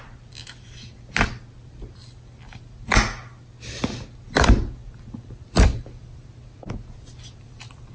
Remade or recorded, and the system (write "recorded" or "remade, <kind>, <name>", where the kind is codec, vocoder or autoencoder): recorded